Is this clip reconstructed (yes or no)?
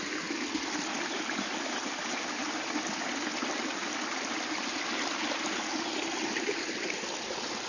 no